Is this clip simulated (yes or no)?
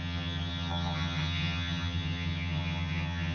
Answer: yes